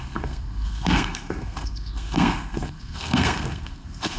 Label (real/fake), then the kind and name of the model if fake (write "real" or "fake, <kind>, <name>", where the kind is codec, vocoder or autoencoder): fake, codec, SNAC